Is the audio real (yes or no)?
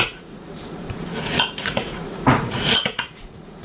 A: no